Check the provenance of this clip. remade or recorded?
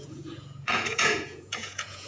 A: remade